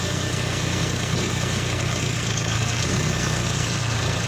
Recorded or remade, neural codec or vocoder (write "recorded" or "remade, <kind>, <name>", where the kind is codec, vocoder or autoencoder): remade, codec, SNAC